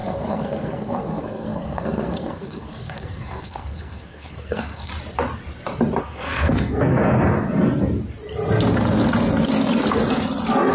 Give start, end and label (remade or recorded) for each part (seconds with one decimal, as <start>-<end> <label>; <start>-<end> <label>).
0.0-4.9 remade; 4.9-6.0 recorded; 6.0-7.0 remade; 7.0-10.7 recorded